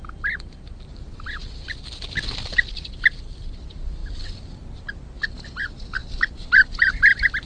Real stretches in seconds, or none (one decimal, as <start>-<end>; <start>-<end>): 0.0-7.5